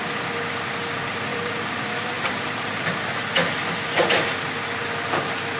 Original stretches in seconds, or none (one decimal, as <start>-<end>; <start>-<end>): 0.0-1.3; 2.3-5.6